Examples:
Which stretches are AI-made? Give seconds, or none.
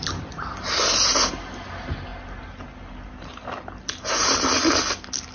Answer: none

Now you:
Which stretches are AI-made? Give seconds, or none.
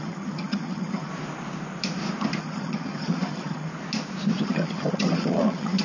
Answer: 0.0-1.1 (vocoder, HiFi-GAN); 2.4-3.7; 4.4-5.8